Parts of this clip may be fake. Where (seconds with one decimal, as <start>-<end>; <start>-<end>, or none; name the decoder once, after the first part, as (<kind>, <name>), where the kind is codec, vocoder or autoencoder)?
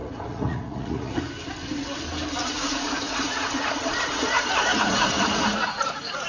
0.0-1.2 (vocoder, Vocos); 2.4-6.3